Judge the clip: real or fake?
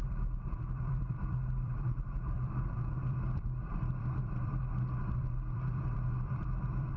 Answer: fake